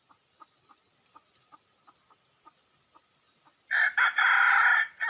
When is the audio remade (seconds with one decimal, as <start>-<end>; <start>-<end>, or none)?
none